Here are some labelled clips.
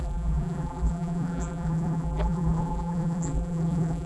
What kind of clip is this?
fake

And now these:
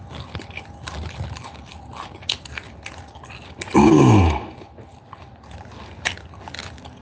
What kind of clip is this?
real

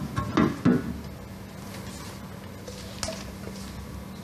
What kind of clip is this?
real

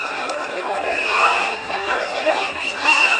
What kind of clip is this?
fake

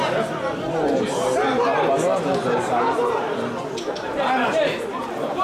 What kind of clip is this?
real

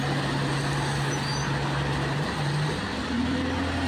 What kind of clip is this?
real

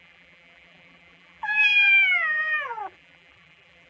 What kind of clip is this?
fake